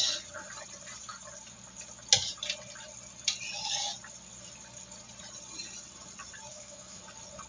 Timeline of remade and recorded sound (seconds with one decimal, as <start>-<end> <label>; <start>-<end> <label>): 0.0-6.5 recorded; 6.5-7.0 remade; 7.0-7.5 recorded